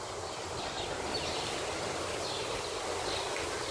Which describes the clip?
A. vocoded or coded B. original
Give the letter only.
B